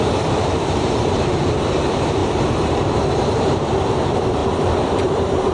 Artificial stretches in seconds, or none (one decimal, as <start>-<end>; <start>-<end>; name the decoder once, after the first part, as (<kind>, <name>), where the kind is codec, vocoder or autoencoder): 0.0-4.4 (vocoder, BigVGAN v2); 5.0-5.5